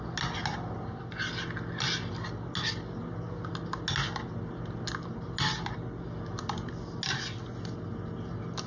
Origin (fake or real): real